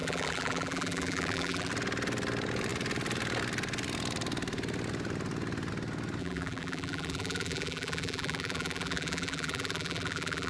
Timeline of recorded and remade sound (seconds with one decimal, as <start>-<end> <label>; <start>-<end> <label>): 0.0-1.7 remade; 1.7-6.2 recorded; 6.2-10.5 remade